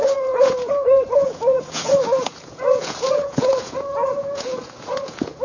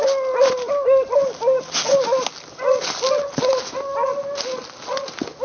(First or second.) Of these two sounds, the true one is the second